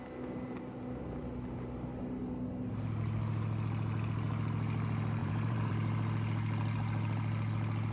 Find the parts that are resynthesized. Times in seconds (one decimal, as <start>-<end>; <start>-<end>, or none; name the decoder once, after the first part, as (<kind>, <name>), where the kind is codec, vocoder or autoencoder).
5.2-5.7 (vocoder, BigVGAN v2)